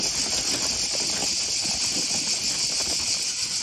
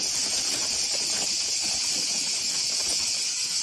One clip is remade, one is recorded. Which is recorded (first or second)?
first